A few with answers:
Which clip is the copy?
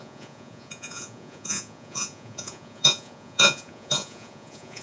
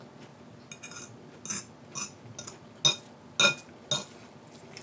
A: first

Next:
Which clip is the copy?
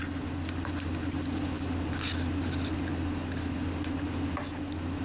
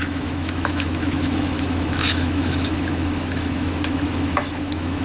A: second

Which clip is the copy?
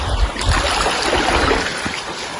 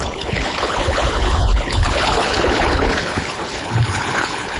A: second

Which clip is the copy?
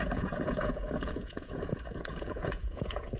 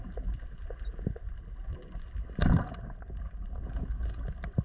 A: first